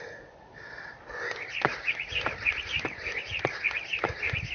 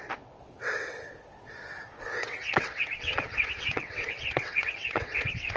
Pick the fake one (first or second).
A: second